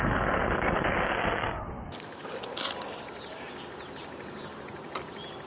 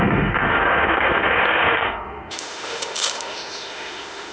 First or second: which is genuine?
first